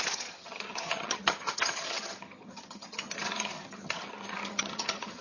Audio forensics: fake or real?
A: fake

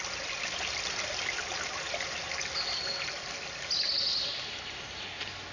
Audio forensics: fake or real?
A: real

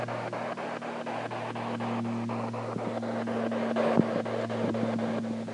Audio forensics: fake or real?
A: real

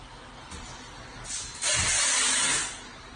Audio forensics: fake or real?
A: real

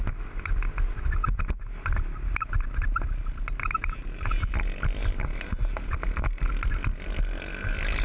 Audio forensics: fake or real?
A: real